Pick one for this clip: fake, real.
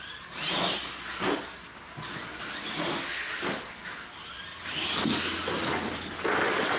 real